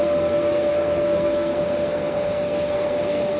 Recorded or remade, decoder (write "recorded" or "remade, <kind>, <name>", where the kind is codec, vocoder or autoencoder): remade, codec, SNAC